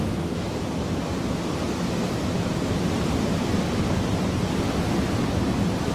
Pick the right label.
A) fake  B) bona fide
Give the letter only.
B